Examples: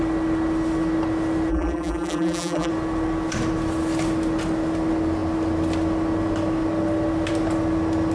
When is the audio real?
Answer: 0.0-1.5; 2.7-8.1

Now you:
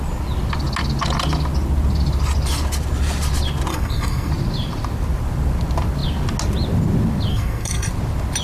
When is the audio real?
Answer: 0.0-3.7; 4.3-7.3; 7.9-8.4

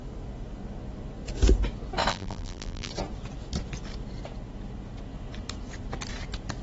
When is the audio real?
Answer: 0.0-2.1; 2.9-6.6

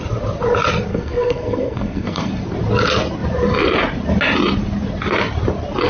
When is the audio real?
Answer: 0.0-0.9; 2.3-5.9

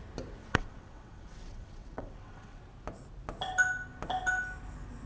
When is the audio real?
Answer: 0.0-0.4; 2.6-5.1